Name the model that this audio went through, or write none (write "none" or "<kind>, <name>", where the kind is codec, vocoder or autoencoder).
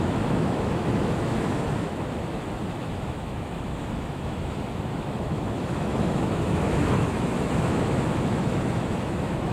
autoencoder, DAC-VAE